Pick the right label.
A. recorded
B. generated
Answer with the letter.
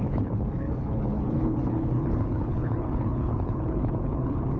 B